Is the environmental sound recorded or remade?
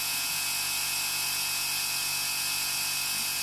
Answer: remade